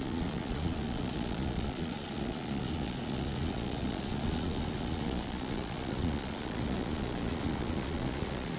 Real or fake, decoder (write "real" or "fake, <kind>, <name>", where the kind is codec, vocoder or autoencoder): fake, vocoder, Vocos